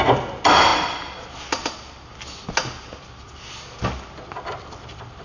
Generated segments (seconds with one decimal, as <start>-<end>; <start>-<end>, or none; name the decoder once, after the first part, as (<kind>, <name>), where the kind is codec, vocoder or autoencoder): none